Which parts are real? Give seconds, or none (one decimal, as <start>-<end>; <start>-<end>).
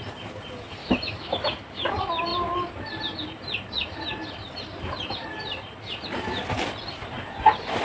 0.0-0.8; 1.9-7.8